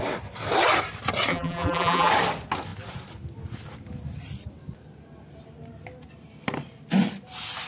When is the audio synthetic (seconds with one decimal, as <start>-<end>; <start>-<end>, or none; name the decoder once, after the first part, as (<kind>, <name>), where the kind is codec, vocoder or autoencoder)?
1.3-2.1 (vocoder, BigVGAN v2)